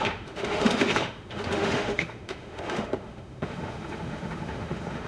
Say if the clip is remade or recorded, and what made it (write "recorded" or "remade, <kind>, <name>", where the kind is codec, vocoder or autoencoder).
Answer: remade, autoencoder, DAC-VAE